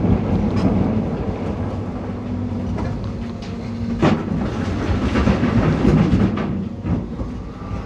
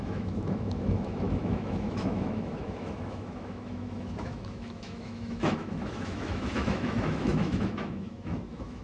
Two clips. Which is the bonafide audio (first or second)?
first